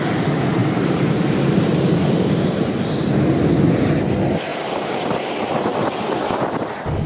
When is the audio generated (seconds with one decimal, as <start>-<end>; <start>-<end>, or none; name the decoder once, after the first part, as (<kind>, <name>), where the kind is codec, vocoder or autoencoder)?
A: 0.6-2.8 (vocoder, BigVGAN v2); 4.5-5.0; 5.7-6.2